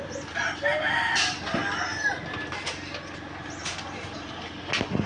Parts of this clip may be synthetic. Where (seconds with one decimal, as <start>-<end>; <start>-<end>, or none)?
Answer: 3.6-4.5